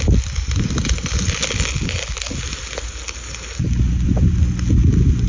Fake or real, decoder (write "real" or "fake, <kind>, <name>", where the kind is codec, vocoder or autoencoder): real